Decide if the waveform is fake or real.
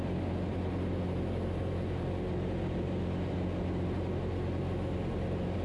real